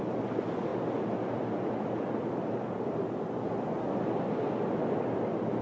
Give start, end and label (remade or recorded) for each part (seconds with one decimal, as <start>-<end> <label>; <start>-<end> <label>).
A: 0.0-5.6 recorded